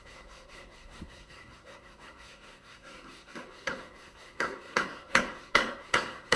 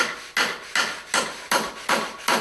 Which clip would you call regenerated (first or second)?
first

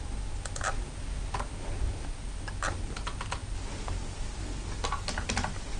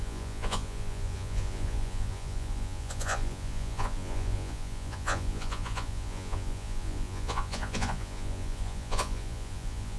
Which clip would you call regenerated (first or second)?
second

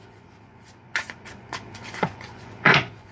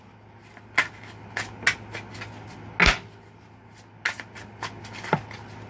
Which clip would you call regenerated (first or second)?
first